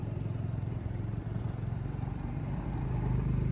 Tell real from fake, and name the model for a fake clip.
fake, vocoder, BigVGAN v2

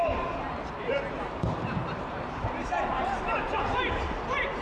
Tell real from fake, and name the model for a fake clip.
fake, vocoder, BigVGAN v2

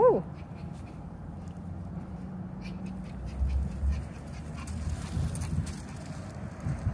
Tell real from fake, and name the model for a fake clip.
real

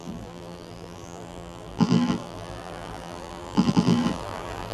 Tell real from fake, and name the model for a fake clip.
fake, vocoder, BigVGAN v2